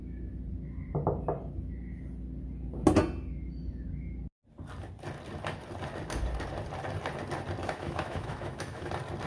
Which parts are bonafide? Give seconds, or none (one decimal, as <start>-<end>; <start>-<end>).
0.0-7.6; 8.9-9.3